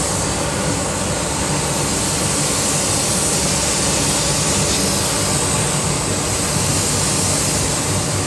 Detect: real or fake real